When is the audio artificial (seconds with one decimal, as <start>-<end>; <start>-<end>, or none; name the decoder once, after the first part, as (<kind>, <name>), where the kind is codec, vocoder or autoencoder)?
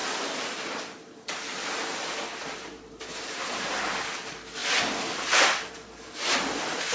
0.0-3.5 (vocoder, BigVGAN v2); 4.6-5.7